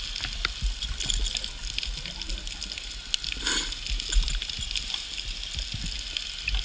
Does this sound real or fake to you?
real